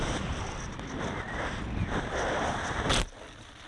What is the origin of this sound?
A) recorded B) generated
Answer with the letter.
A